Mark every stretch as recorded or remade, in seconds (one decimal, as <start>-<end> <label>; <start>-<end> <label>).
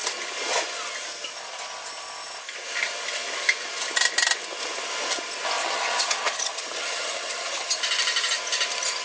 0.0-5.6 recorded; 5.6-7.8 remade; 7.8-9.0 recorded